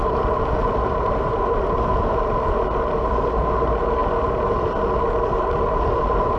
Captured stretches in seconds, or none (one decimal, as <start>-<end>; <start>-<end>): 0.0-6.4